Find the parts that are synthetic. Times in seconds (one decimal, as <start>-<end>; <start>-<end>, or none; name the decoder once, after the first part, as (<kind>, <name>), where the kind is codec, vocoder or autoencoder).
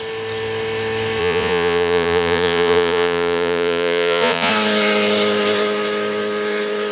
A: 1.2-4.5 (vocoder, Vocos)